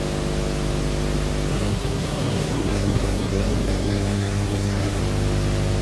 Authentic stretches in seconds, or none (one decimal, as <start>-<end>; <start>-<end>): 0.0-1.5; 5.0-5.8